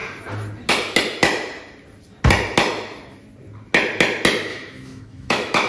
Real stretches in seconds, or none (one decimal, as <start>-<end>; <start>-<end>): 0.0-4.5